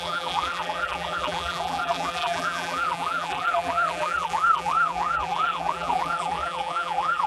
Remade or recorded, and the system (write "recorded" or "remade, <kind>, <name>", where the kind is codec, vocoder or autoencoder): remade, vocoder, BigVGAN v2